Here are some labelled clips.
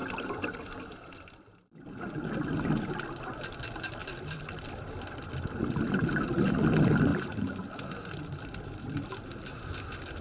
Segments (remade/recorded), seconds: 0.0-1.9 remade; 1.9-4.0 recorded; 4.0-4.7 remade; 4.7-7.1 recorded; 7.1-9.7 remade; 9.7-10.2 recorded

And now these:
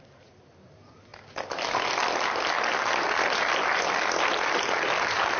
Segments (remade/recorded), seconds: 0.0-5.4 recorded

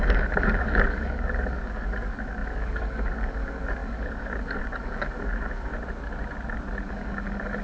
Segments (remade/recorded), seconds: 0.0-5.7 remade; 5.7-6.9 recorded; 6.9-7.6 remade

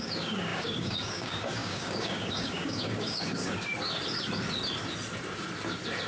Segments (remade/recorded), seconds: 0.0-3.7 remade; 3.7-6.1 recorded

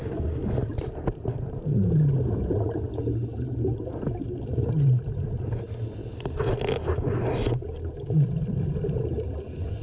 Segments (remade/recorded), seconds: 0.0-0.7 recorded; 0.7-3.0 remade; 3.0-6.0 recorded; 6.0-6.5 remade; 6.5-9.8 recorded

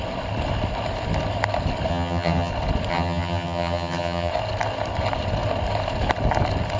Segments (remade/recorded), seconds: 0.0-1.9 recorded; 1.9-2.5 remade; 2.5-2.9 recorded; 2.9-4.3 remade; 4.3-6.8 recorded

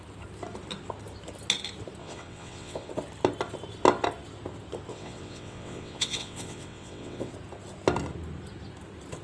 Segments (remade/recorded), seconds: 0.0-2.0 recorded; 2.0-2.9 remade; 2.9-4.9 recorded; 4.9-7.3 remade; 7.3-9.2 recorded

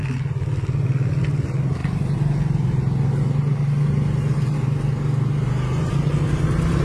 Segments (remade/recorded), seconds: 0.0-6.8 recorded